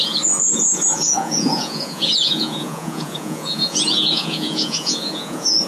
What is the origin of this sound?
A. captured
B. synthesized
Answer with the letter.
B